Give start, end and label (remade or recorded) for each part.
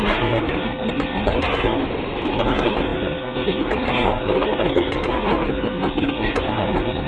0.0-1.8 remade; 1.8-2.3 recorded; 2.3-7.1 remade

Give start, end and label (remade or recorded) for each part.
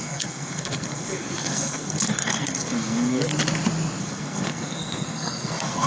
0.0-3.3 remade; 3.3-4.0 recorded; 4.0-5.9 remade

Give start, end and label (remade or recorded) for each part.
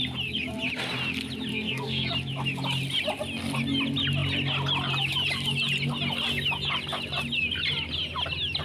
0.0-1.5 recorded; 1.5-2.1 remade; 2.1-8.6 recorded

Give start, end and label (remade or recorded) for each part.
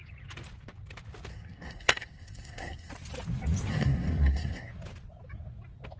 0.0-1.3 recorded; 1.3-2.9 remade; 2.9-3.7 recorded; 3.7-4.7 remade; 4.7-6.0 recorded